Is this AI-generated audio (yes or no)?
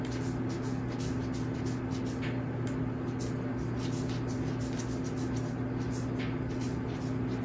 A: no